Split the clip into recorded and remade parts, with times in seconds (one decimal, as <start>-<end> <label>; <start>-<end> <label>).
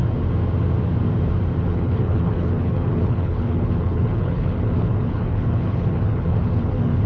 0.0-1.6 recorded; 1.6-7.1 remade